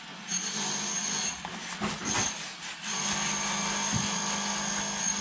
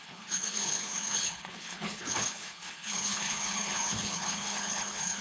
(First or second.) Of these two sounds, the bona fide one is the first